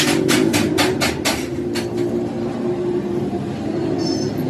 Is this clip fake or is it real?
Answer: real